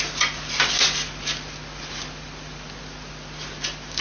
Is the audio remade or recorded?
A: recorded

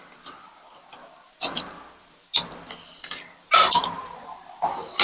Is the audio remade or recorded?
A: recorded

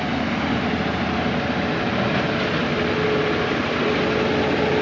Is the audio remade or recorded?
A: recorded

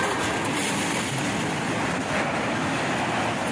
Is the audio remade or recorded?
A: recorded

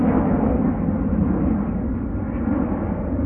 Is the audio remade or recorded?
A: recorded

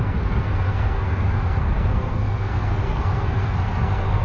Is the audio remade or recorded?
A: remade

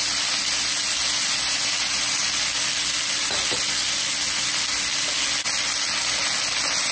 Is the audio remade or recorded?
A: recorded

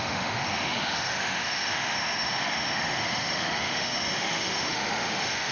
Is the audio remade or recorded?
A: remade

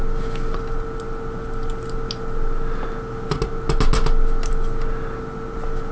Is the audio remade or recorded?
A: recorded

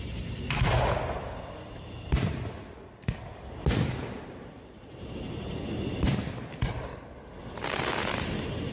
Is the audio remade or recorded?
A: recorded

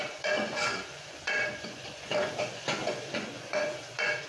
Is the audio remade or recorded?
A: remade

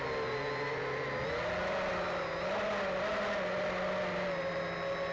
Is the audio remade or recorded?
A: recorded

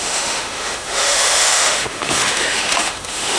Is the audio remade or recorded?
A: remade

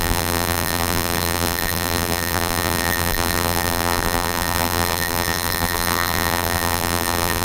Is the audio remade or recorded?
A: remade